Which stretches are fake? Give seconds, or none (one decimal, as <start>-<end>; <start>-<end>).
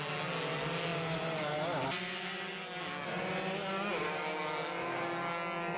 none